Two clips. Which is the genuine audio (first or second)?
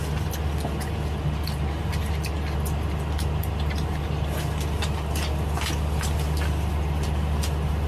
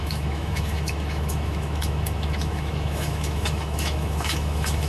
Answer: first